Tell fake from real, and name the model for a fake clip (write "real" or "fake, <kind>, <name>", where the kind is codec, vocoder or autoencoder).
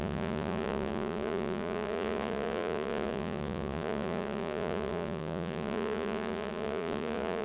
fake, vocoder, Vocos